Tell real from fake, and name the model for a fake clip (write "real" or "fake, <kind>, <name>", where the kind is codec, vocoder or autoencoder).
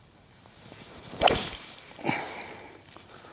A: fake, vocoder, BigVGAN v2